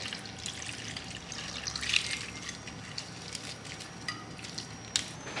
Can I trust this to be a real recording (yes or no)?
yes